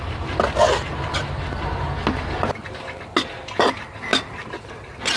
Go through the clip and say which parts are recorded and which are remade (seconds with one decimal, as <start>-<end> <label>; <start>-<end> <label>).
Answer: 0.0-5.2 recorded